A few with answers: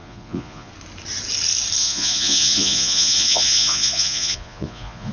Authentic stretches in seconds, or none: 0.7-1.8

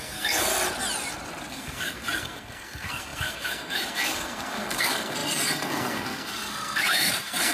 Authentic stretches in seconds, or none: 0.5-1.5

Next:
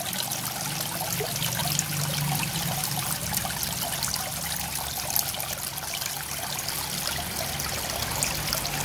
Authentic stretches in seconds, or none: 0.0-8.8

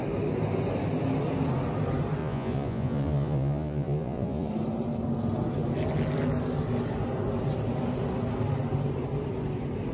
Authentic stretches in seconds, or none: 0.0-2.2; 4.5-9.9

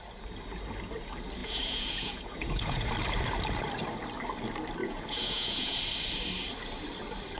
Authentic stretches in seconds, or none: 0.0-1.4; 2.9-4.8; 5.8-7.4

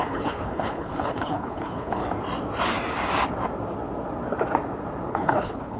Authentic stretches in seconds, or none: 2.0-5.1